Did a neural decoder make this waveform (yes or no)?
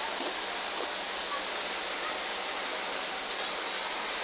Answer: no